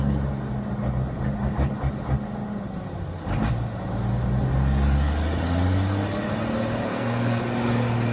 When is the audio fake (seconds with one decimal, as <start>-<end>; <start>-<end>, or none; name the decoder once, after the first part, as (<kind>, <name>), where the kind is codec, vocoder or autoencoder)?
6.9-7.4 (codec, SNAC)